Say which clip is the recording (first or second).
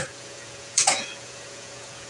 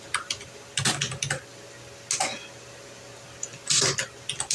second